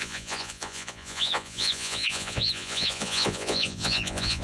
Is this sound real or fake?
fake